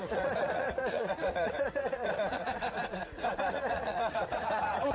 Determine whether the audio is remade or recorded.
remade